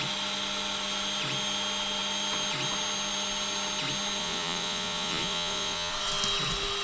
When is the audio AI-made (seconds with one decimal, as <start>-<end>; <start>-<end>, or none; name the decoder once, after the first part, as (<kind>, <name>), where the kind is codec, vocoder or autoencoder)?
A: 4.2-5.9 (vocoder, Vocos)

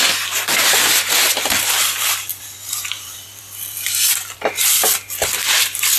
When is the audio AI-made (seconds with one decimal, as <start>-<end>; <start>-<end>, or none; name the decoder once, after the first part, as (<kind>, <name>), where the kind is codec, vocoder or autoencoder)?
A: 2.3-6.0 (vocoder, BigVGAN v2)

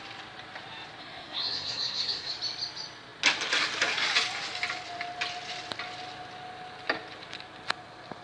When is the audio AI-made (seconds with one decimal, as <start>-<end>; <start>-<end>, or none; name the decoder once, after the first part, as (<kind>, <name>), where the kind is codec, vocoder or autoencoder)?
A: 1.0-2.3 (codec, SNAC)

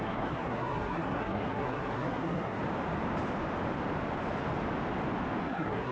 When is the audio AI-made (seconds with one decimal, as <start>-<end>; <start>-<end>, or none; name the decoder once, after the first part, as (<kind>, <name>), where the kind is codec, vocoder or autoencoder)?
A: 0.0-2.6 (codec, SNAC); 5.4-5.9